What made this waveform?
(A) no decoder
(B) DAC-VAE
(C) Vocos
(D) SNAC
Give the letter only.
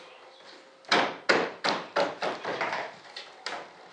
A